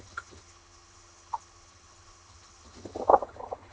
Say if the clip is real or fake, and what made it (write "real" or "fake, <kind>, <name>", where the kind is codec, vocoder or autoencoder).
fake, vocoder, HiFi-GAN